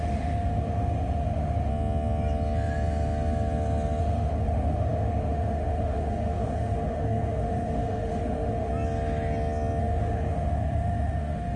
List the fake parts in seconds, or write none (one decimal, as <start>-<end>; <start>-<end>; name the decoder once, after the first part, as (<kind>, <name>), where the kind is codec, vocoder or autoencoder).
0.0-1.7 (autoencoder, DAC-VAE); 4.0-8.7; 9.8-11.6